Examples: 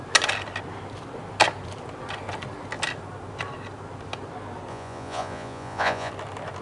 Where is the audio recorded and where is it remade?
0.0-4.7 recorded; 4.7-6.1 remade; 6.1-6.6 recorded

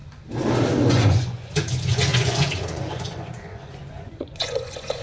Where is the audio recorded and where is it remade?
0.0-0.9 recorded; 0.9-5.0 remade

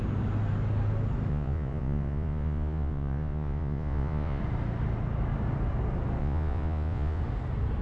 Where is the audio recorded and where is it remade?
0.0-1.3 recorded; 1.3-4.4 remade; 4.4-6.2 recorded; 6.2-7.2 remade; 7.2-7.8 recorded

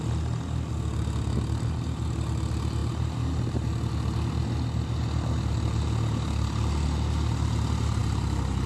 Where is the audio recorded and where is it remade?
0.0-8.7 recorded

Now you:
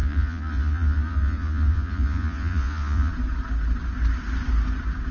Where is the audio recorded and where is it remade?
0.0-3.1 remade; 3.1-5.1 recorded

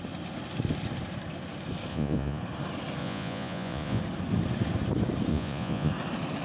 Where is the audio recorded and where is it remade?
0.0-1.9 recorded; 1.9-2.4 remade; 2.4-3.0 recorded; 3.0-4.0 remade; 4.0-5.3 recorded; 5.3-5.9 remade; 5.9-6.4 recorded

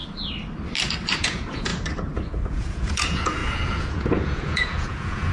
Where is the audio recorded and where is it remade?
0.0-1.2 recorded; 1.2-1.7 remade; 1.7-2.5 recorded; 2.5-5.3 remade